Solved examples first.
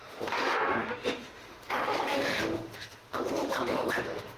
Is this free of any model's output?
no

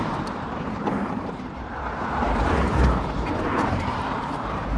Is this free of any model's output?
no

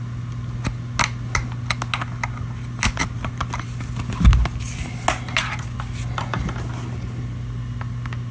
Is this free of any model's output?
yes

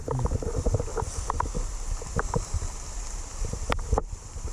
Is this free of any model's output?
no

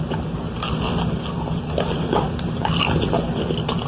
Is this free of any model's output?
yes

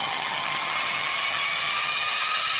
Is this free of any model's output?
no